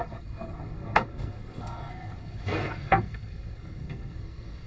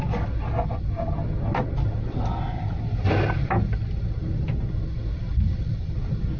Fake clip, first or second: first